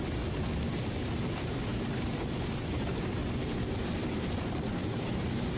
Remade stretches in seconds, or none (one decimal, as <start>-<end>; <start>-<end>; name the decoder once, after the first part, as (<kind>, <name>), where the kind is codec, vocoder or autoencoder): 4.7-5.6 (vocoder, BigVGAN v2)